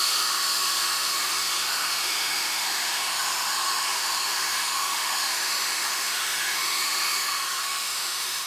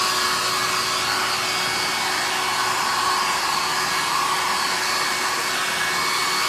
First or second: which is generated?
first